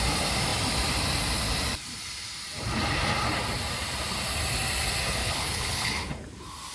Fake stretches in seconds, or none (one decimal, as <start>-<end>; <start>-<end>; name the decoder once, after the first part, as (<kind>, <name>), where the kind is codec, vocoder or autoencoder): 5.2-5.9 (codec, HILCodec)